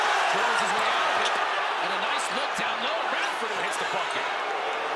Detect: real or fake fake